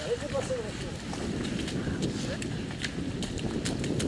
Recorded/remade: recorded